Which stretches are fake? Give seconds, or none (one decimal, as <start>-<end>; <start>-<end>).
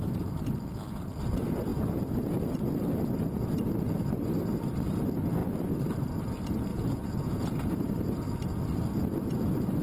6.7-7.7